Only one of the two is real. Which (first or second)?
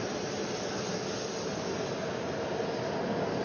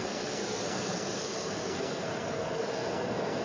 first